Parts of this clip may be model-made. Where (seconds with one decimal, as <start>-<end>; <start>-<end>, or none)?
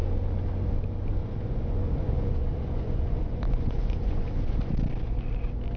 1.2-4.7